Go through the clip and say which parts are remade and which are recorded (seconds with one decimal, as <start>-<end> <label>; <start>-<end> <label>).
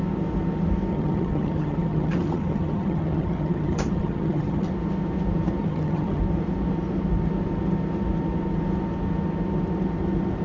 0.0-0.9 recorded; 0.9-4.7 remade; 4.7-5.6 recorded; 5.6-6.2 remade; 6.2-10.4 recorded